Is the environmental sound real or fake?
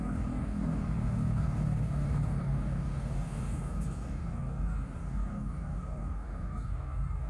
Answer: fake